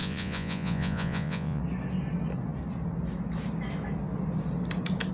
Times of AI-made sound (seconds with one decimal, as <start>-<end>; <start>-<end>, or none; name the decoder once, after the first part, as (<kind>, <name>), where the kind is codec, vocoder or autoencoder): 0.0-1.6 (vocoder, Vocos)